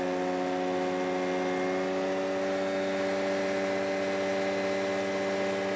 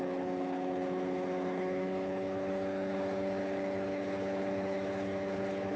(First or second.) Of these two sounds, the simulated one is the second